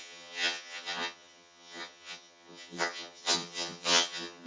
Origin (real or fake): fake